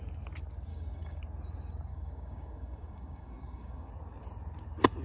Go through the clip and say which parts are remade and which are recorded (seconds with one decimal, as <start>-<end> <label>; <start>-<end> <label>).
0.0-0.7 recorded; 0.7-1.2 remade; 1.2-1.9 recorded; 1.9-3.9 remade; 3.9-5.0 recorded

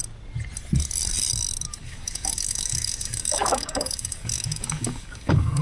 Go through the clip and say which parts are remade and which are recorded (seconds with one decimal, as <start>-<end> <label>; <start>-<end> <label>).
0.0-1.8 recorded; 1.8-5.6 remade

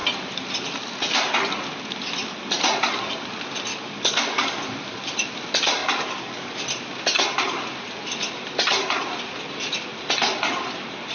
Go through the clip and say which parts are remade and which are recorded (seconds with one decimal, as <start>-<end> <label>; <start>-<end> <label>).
0.0-3.7 recorded; 3.7-4.6 remade; 4.6-5.8 recorded; 5.8-6.6 remade; 6.6-11.1 recorded

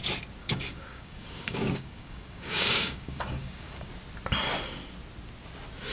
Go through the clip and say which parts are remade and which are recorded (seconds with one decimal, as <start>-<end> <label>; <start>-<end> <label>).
0.0-0.4 recorded; 0.4-3.9 remade; 3.9-5.9 recorded

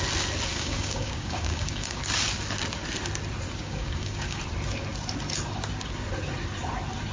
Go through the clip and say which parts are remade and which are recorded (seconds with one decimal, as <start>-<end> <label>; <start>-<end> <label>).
0.0-0.5 recorded; 0.5-2.0 remade; 2.0-3.6 recorded; 3.6-4.4 remade; 4.4-7.1 recorded

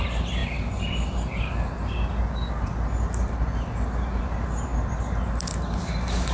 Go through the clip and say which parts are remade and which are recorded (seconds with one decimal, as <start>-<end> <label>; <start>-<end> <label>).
0.0-6.3 recorded

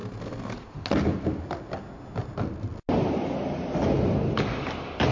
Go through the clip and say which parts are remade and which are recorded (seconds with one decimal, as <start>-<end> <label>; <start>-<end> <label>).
0.0-5.1 recorded